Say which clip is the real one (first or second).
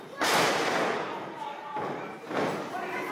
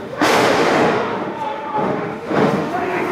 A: first